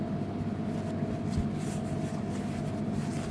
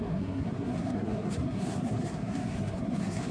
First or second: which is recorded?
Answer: first